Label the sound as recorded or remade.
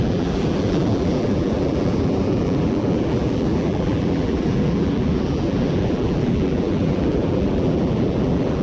remade